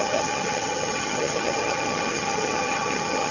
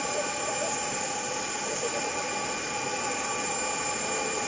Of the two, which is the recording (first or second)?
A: second